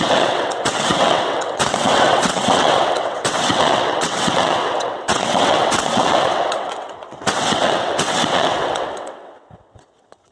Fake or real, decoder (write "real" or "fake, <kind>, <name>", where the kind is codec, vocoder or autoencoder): fake, vocoder, WaveNeXt